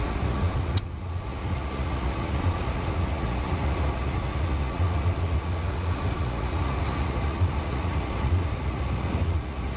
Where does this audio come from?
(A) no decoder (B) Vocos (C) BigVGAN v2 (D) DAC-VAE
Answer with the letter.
B